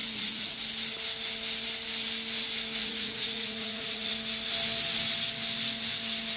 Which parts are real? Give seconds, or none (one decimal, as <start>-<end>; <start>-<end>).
0.6-2.8; 4.1-6.4